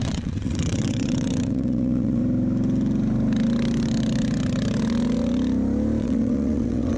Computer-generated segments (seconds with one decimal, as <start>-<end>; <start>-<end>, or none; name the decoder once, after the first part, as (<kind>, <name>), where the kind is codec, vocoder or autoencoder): 0.0-2.2 (vocoder, WaveNeXt); 6.0-7.0